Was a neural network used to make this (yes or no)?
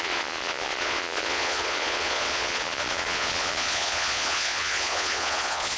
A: yes